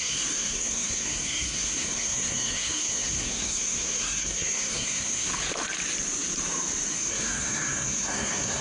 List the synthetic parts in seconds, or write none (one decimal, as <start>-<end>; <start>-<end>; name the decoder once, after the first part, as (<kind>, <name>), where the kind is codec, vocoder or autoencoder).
0.0-5.3 (codec, SNAC); 6.9-8.6